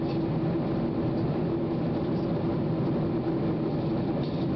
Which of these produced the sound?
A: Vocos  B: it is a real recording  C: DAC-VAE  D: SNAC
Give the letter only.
B